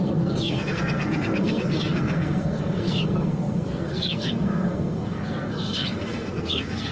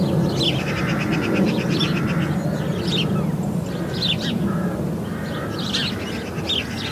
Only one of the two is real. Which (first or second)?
second